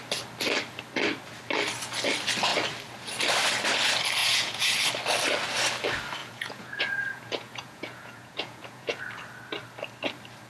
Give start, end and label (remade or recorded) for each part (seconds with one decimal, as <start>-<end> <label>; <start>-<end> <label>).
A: 0.0-4.2 recorded; 4.2-4.8 remade; 4.8-6.2 recorded; 6.2-9.0 remade; 9.0-10.5 recorded